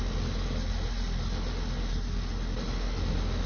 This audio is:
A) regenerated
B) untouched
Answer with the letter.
B